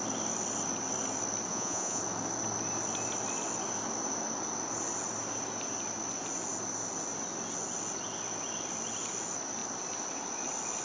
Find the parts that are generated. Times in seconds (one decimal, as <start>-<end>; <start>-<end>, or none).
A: 1.5-2.0